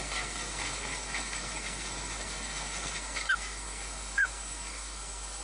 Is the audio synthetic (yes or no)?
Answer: yes